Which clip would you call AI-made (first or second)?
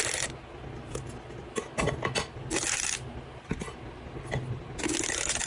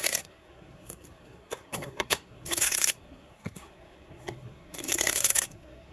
second